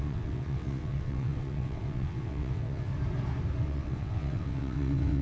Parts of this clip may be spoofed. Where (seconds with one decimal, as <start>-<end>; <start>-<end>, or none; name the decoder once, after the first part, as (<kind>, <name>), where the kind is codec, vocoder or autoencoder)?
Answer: 0.0-2.9 (vocoder, WaveNeXt); 3.6-5.2